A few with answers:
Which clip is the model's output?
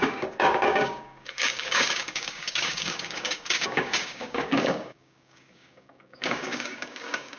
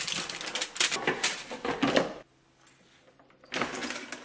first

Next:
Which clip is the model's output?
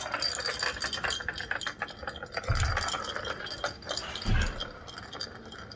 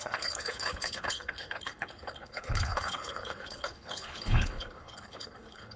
second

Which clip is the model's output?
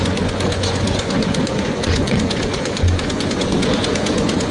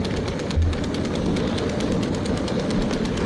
first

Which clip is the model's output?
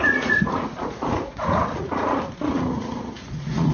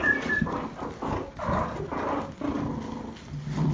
first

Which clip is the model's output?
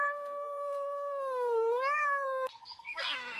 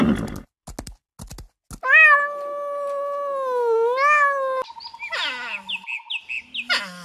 first